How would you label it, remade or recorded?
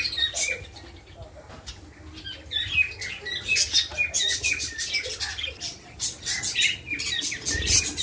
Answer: recorded